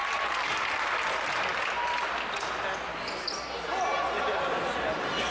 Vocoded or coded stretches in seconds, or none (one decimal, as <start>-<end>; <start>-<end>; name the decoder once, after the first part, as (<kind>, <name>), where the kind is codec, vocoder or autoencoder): none